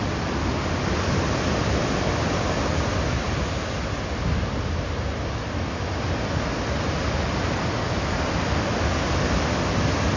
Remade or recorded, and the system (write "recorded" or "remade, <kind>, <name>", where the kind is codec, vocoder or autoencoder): recorded